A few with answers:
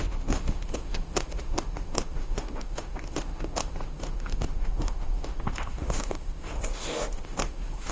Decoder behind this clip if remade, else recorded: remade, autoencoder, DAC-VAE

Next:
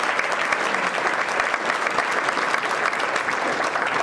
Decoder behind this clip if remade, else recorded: recorded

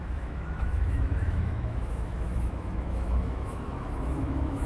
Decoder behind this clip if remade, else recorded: remade, autoencoder, DAC-VAE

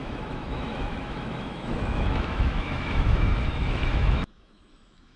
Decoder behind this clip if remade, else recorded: remade, autoencoder, DAC-VAE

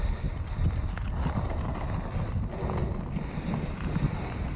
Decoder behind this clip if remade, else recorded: recorded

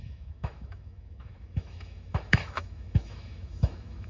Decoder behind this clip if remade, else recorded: remade, autoencoder, DAC-VAE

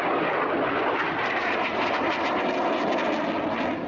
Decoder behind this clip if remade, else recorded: recorded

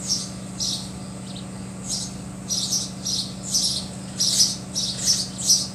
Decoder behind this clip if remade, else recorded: recorded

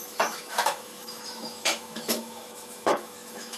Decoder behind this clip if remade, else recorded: remade, autoencoder, DAC-VAE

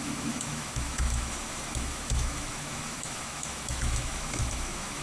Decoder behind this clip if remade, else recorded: remade, autoencoder, DAC-VAE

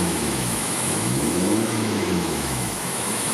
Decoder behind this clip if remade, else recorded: remade, autoencoder, DAC-VAE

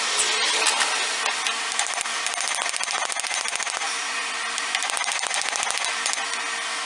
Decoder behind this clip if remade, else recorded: recorded